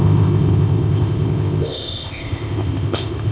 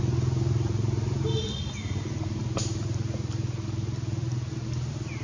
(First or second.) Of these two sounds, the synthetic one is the first